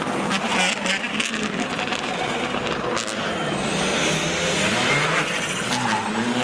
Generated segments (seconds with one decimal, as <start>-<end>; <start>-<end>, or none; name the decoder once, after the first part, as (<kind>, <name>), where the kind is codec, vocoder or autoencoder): none